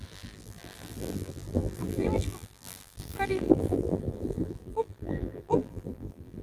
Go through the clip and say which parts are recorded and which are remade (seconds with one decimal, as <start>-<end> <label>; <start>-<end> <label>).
0.0-6.4 remade